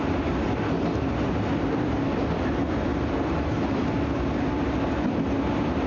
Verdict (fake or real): real